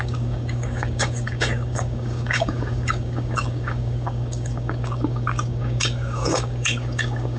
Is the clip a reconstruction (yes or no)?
yes